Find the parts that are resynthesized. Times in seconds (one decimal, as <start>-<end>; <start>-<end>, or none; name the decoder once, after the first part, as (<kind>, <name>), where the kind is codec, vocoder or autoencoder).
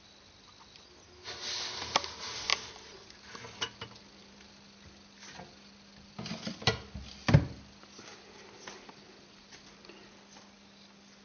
none